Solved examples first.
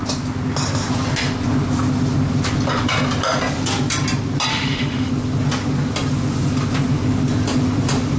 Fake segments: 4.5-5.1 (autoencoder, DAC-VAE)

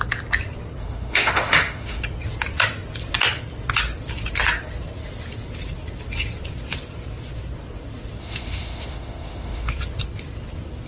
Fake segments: 0.8-2.0 (autoencoder, DAC-VAE); 8.2-9.7